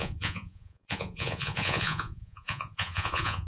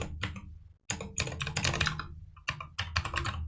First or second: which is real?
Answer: second